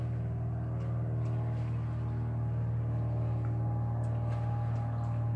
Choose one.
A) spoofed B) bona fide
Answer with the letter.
B